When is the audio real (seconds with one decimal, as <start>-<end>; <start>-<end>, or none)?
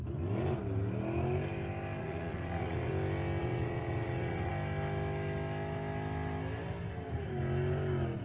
0.0-2.0; 2.9-3.4; 4.5-8.2